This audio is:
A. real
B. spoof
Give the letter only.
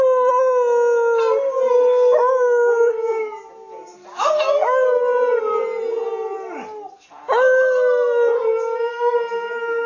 A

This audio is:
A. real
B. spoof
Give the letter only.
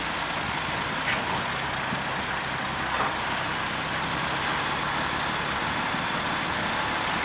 A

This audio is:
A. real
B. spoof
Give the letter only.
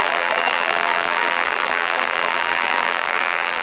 B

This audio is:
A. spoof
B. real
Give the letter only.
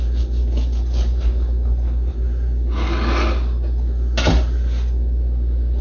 B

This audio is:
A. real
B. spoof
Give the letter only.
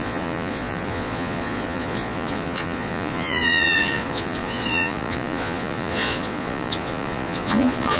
B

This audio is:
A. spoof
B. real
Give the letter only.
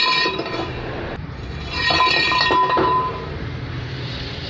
A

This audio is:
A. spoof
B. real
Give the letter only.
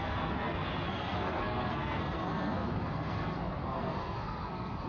A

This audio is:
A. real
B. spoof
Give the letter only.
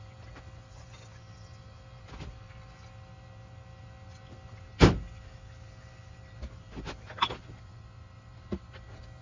A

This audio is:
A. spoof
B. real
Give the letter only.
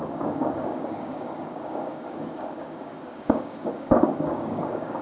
A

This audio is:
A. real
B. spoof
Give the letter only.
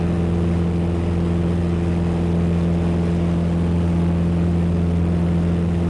A